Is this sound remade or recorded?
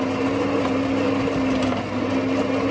recorded